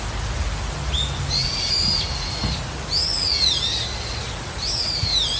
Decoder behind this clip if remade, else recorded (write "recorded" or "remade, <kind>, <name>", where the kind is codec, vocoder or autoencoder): recorded